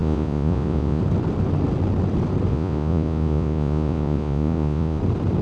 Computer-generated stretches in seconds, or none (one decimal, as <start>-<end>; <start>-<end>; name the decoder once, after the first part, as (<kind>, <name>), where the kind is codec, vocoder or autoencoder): 0.0-1.0 (vocoder, Vocos); 2.5-5.0